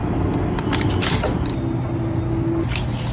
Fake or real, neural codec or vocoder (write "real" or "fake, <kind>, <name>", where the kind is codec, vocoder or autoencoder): real